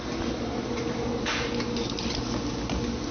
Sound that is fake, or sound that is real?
real